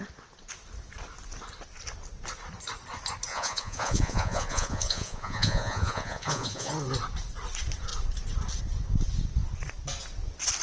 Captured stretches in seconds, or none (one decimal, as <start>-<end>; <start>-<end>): 0.0-3.3; 6.7-10.6